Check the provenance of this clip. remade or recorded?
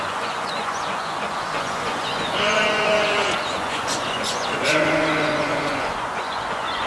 remade